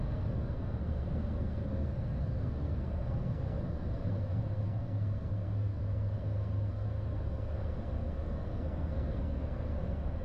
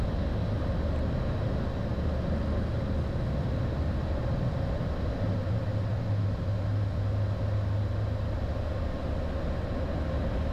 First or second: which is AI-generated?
first